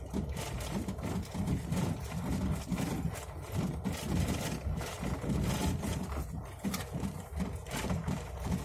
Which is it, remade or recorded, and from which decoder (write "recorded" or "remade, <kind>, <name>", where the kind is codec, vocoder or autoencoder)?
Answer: recorded